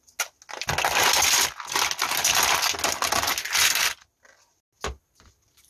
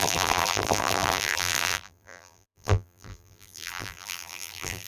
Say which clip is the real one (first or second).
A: first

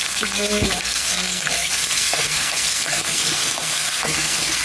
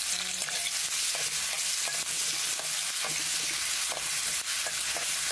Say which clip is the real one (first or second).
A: second